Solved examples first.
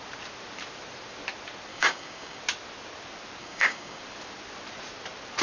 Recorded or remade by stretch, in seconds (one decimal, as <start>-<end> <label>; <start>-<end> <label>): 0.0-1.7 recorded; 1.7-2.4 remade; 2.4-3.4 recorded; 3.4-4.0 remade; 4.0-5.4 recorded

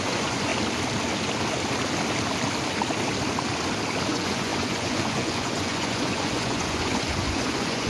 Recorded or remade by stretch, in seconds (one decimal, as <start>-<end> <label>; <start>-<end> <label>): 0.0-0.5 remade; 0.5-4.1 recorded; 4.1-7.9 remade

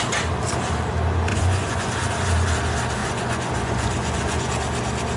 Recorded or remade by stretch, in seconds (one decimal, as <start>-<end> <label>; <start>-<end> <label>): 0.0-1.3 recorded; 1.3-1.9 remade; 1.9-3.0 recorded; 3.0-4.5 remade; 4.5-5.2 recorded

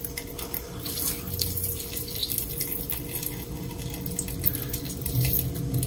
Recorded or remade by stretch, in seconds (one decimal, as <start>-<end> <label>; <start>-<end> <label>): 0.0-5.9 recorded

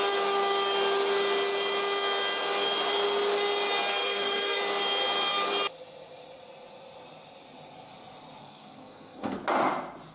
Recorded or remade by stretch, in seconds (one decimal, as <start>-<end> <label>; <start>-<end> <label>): 0.0-3.9 recorded; 3.9-4.6 remade; 4.6-8.4 recorded; 8.4-9.4 remade; 9.4-10.1 recorded

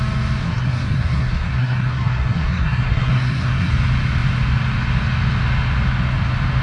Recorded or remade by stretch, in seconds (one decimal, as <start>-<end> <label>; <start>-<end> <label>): 0.0-0.4 recorded; 0.4-3.7 remade; 3.7-6.6 recorded